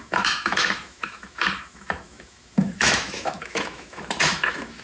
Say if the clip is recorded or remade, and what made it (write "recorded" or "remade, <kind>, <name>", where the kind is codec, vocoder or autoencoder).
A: remade, autoencoder, DAC-VAE